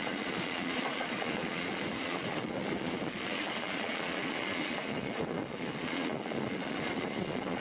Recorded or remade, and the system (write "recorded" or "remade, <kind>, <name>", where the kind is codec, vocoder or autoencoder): remade, vocoder, Vocos